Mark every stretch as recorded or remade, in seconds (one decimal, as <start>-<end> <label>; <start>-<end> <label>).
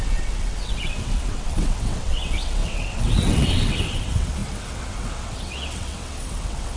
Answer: 0.0-6.8 remade